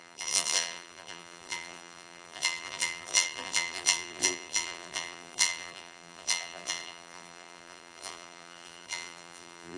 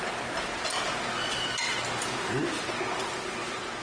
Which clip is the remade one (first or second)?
first